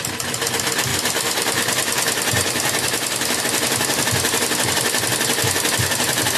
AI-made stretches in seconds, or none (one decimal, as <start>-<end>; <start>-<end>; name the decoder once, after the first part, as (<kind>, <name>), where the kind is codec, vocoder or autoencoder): none